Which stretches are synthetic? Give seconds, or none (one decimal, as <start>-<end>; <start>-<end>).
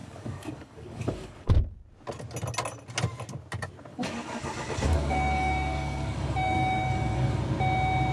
0.0-1.5; 3.9-7.4